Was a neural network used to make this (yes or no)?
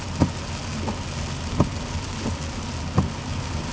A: no